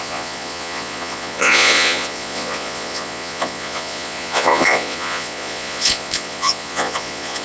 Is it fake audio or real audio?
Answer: fake